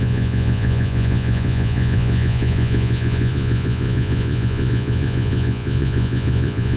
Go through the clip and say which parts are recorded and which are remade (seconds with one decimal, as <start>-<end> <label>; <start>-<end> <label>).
0.0-6.8 remade